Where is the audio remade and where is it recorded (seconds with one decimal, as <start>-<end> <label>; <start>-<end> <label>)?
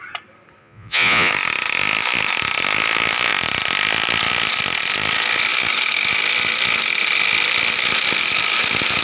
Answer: 0.0-0.6 recorded; 0.6-1.3 remade; 1.3-9.0 recorded